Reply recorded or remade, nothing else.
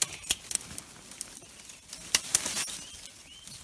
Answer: recorded